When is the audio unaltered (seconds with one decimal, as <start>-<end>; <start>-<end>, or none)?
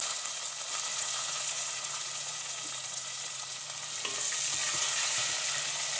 0.0-0.9; 3.6-4.6; 5.3-6.0